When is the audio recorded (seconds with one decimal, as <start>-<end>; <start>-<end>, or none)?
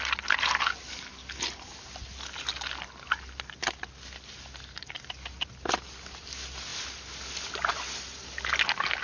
0.0-9.0